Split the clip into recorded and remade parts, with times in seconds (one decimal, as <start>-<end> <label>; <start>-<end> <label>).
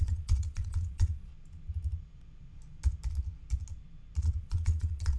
0.0-1.3 remade; 1.3-4.4 recorded; 4.4-5.2 remade